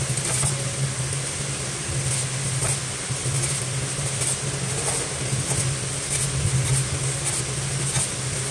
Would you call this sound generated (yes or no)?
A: no